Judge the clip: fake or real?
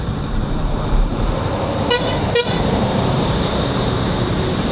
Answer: fake